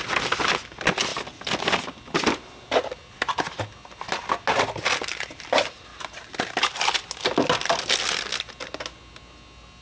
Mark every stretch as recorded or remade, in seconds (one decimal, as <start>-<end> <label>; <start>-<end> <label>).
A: 0.0-9.8 recorded